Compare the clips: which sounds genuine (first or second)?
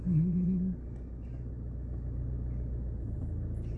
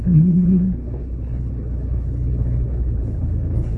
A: first